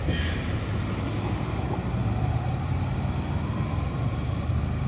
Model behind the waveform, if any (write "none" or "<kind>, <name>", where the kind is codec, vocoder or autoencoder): none